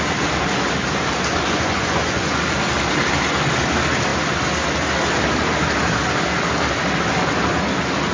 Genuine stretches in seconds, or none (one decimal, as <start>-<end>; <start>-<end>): 0.0-1.3; 2.4-8.1